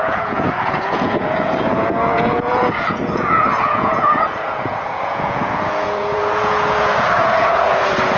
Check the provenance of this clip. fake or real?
fake